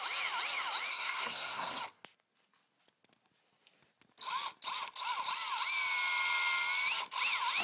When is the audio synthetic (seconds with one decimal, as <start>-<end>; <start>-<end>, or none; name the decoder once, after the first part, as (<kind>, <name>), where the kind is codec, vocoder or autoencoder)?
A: 0.9-1.8 (codec, SNAC)